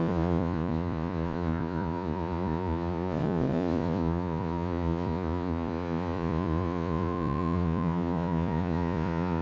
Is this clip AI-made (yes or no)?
yes